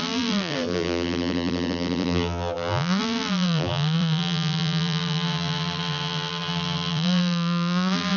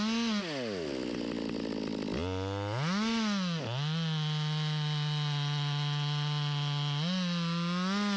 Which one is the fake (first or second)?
first